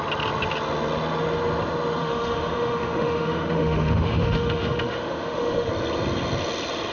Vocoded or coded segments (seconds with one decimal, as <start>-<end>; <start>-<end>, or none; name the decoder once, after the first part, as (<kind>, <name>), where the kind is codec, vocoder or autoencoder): 2.0-5.7 (autoencoder, DAC-VAE)